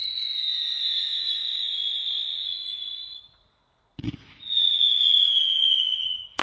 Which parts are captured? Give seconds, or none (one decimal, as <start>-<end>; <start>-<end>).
0.0-2.3; 5.3-5.9